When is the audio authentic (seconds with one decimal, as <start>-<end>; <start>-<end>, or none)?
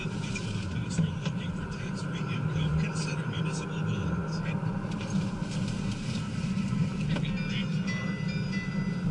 0.0-0.8; 3.4-9.1